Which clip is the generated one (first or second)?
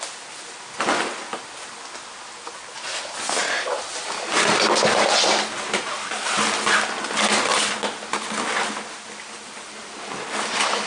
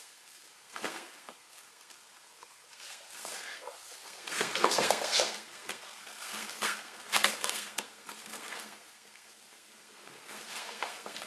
second